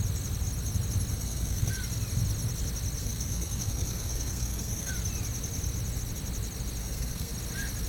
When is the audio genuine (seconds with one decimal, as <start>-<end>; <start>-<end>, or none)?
0.0-1.1; 1.7-3.0; 4.9-6.8; 7.3-7.9

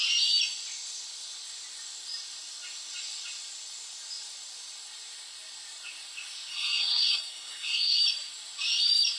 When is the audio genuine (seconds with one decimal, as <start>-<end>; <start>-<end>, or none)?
0.0-6.5; 8.0-9.2

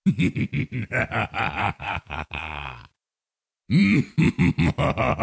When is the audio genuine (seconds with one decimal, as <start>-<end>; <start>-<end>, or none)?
0.0-1.6; 2.8-5.2

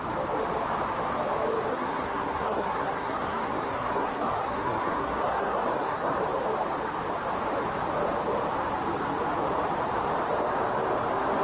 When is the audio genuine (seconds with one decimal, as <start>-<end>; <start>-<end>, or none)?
0.0-1.7; 6.2-11.4

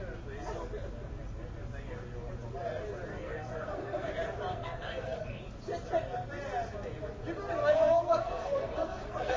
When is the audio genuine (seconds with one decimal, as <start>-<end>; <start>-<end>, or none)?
0.0-3.1; 4.1-4.5; 5.4-7.6

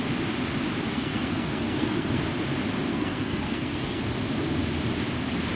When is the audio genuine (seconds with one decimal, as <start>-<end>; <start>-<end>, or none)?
0.0-0.9; 2.2-2.9; 4.0-5.6